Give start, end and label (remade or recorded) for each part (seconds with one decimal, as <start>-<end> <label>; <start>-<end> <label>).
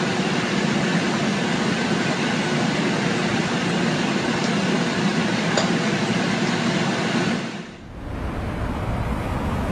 0.0-9.7 recorded